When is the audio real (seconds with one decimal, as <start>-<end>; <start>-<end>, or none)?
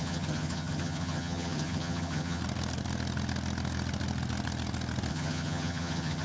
2.4-5.1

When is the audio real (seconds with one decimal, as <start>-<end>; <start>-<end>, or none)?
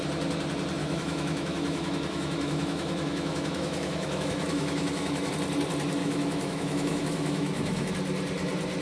0.0-0.8; 5.3-6.0; 7.9-8.8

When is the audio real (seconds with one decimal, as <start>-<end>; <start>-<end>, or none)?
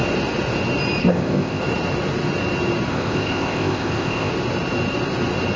0.0-1.0; 1.6-2.9; 4.3-5.6